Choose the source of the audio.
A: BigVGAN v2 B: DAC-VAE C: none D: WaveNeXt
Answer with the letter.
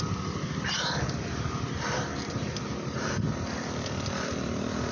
C